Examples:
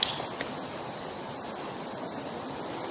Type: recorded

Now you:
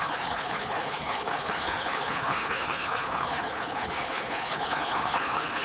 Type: remade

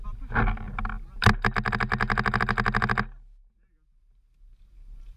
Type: recorded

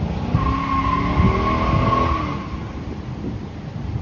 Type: recorded